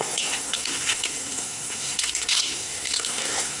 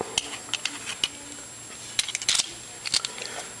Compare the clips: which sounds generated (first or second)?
first